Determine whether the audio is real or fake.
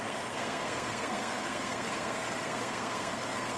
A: fake